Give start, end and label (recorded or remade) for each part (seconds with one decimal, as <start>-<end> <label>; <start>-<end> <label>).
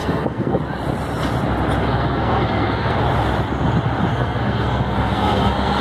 0.0-0.6 remade; 0.6-1.8 recorded; 1.8-3.0 remade; 3.0-4.1 recorded; 4.1-5.8 remade